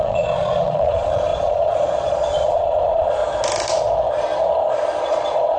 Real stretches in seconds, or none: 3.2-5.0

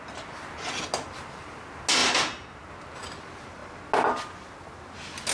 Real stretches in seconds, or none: 0.0-5.3

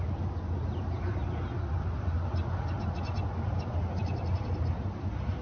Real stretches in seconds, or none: 0.0-5.4

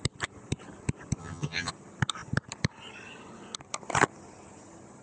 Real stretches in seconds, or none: 0.0-1.2; 1.7-5.0

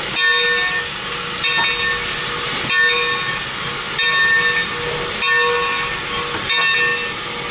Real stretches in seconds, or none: 0.0-7.5